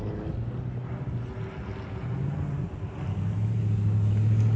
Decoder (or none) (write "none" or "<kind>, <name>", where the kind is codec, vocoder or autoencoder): none